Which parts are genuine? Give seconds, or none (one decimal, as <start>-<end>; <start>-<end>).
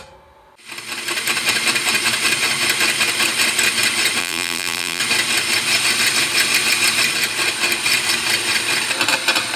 0.0-4.2; 5.0-9.6